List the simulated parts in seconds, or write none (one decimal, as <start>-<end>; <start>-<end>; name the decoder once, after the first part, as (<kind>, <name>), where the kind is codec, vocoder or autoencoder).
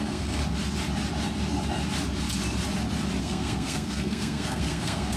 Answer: 0.0-0.4 (codec, SNAC); 3.2-5.2